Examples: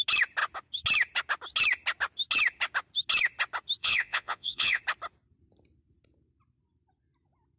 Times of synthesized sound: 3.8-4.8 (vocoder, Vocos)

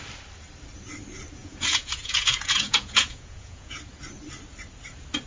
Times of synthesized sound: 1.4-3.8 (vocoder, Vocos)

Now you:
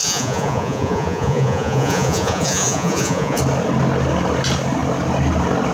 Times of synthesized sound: 0.0-3.4 (vocoder, Vocos)

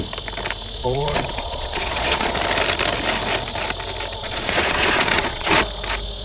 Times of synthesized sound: 0.8-2.3 (vocoder, Vocos); 4.2-5.6

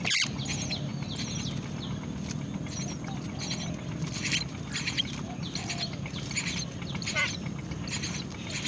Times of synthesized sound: none

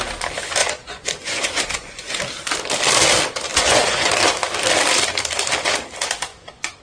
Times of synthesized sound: 0.6-2.2 (vocoder, Vocos); 3.5-4.1; 6.3-6.8